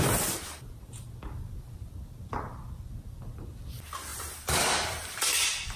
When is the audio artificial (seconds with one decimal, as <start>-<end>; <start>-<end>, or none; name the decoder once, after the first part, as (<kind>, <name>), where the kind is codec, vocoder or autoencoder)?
4.1-5.8 (vocoder, BigVGAN v2)